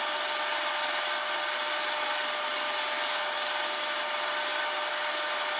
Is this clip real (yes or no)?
yes